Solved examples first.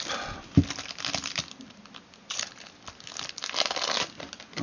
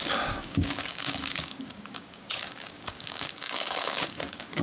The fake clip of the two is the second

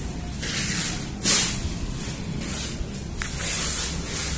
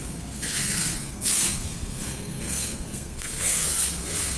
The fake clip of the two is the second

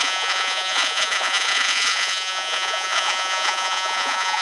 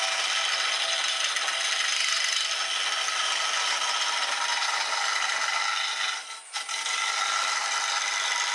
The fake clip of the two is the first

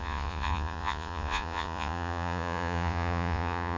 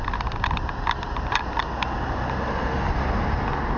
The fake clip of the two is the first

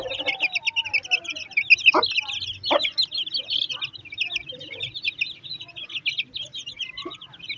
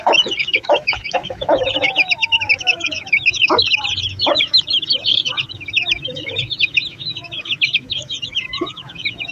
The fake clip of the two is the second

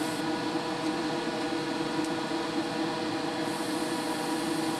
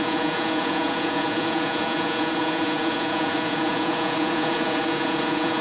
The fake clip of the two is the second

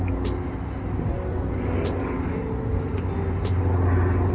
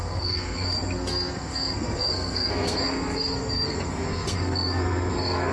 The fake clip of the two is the second